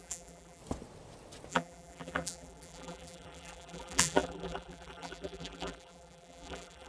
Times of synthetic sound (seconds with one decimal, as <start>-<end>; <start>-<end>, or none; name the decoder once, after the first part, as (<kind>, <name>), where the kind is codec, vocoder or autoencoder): 0.0-0.6 (vocoder, BigVGAN v2); 1.5-6.9